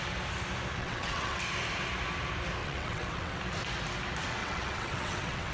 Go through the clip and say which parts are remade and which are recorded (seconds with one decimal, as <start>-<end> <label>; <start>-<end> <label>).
0.0-0.8 recorded; 0.8-1.4 remade; 1.4-2.6 recorded; 2.6-3.4 remade; 3.4-4.4 recorded; 4.4-5.5 remade